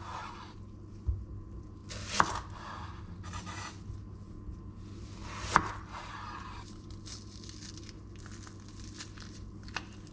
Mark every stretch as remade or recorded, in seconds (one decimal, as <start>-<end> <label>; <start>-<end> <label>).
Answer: 0.0-10.1 recorded